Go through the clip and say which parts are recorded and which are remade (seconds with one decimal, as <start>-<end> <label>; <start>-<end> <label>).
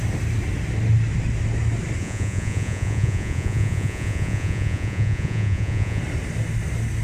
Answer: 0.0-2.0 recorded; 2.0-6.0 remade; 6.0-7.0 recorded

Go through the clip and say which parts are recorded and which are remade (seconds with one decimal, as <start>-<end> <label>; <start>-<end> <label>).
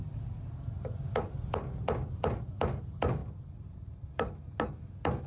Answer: 0.0-5.3 recorded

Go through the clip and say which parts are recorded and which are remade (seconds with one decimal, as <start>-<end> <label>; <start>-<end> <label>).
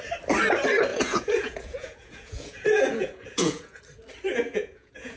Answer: 0.0-0.9 recorded; 0.9-3.8 remade; 3.8-4.3 recorded; 4.3-5.2 remade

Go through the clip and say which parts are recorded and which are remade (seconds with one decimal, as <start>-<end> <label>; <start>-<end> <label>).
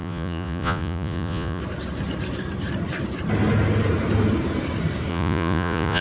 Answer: 0.0-1.6 remade; 1.6-5.1 recorded; 5.1-6.0 remade